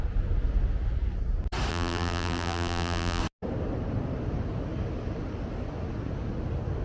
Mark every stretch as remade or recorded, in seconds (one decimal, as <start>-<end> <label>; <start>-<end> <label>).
0.0-1.7 recorded; 1.7-3.2 remade; 3.2-6.8 recorded